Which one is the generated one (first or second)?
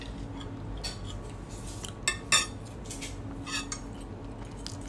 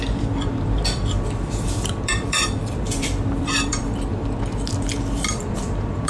second